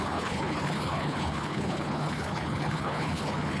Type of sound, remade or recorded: remade